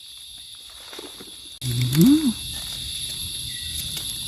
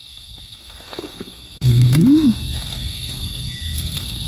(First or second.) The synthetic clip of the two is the second